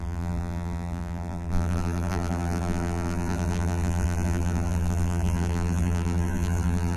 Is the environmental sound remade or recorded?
remade